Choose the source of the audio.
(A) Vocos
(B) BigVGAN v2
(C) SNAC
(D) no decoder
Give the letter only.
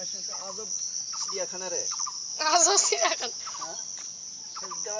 D